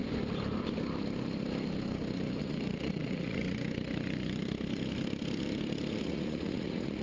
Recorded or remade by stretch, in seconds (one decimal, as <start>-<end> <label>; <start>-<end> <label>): 0.0-2.4 recorded; 2.4-3.4 remade; 3.4-6.0 recorded; 6.0-7.0 remade

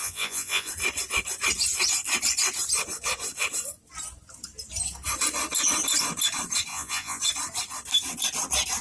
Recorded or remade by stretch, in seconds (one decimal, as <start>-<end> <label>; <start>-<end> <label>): 0.0-0.7 remade; 0.7-6.7 recorded; 6.7-7.2 remade; 7.2-8.8 recorded